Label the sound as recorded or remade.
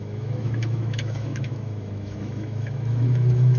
remade